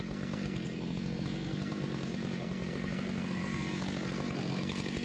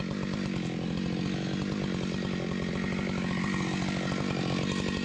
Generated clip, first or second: first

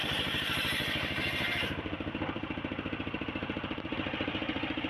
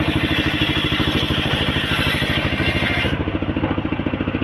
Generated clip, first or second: first